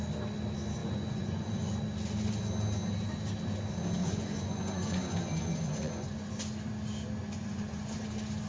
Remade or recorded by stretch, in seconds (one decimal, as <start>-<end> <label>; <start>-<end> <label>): 0.0-0.8 recorded; 0.8-1.8 remade; 1.8-4.0 recorded; 4.0-6.4 remade; 6.4-7.2 recorded; 7.2-8.0 remade; 8.0-8.5 recorded